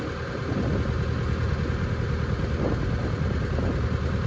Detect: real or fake real